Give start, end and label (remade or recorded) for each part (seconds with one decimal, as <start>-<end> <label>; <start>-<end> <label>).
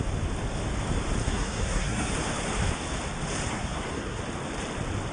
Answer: 0.0-1.2 recorded; 1.2-2.1 remade; 2.1-3.5 recorded; 3.5-4.2 remade; 4.2-5.1 recorded